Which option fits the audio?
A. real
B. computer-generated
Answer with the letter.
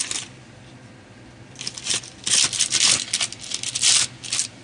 A